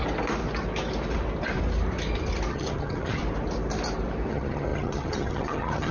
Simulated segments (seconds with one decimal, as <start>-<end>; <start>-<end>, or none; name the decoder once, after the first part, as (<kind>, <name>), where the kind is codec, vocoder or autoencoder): 2.5-3.2 (vocoder, HiFi-GAN); 4.3-5.9